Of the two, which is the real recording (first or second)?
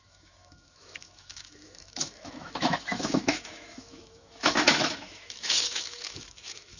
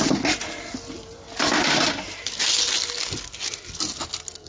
second